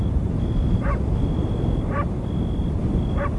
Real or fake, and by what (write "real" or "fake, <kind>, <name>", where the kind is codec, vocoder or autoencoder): real